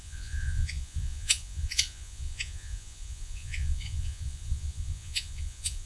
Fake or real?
fake